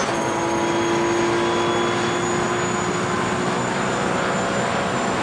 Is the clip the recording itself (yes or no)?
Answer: yes